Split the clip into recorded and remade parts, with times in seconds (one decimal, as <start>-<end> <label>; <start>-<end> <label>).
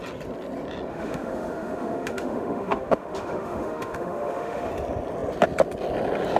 0.0-0.9 recorded; 0.9-4.7 remade; 4.7-6.4 recorded